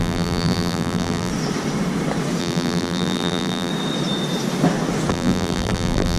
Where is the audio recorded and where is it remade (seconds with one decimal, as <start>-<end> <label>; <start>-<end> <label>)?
0.0-1.3 remade; 1.3-2.4 recorded; 2.4-3.7 remade; 3.7-5.1 recorded; 5.1-6.2 remade

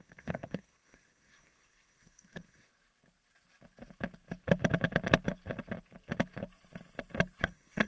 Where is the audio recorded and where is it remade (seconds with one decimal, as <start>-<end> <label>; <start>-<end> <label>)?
0.0-2.7 remade; 2.7-7.4 recorded; 7.4-7.9 remade

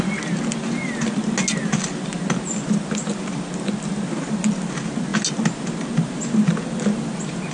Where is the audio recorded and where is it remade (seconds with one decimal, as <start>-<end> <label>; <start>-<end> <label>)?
0.0-7.5 recorded